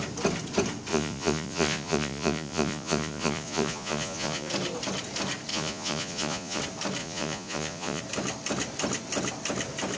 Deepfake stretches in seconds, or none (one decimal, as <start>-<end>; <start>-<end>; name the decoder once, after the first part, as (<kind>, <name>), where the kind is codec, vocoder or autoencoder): 0.9-4.5 (vocoder, Vocos); 5.5-6.6; 7.0-8.0